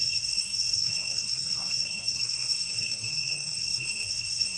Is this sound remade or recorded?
remade